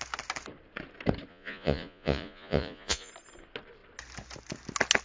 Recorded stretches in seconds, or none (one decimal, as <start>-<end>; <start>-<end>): 0.0-1.3; 3.1-5.0